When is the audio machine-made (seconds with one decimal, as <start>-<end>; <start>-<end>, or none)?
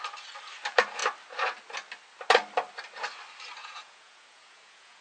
3.6-5.0